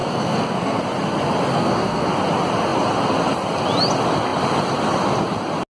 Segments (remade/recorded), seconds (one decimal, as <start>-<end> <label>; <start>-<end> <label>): 0.0-0.8 remade; 0.8-1.5 recorded; 1.5-2.1 remade; 2.1-5.7 recorded